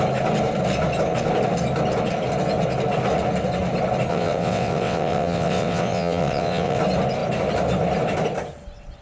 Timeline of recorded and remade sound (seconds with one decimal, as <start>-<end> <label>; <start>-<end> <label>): 0.0-4.1 recorded; 4.1-6.8 remade; 6.8-9.0 recorded